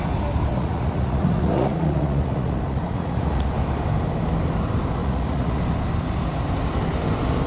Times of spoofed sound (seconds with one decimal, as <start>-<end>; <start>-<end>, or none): 0.5-3.5; 5.0-5.6